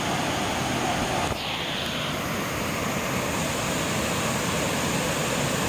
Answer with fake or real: real